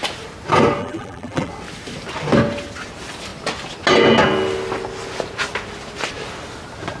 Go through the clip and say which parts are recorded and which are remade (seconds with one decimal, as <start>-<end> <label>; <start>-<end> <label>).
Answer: 0.0-0.8 recorded; 0.8-1.5 remade; 1.5-7.0 recorded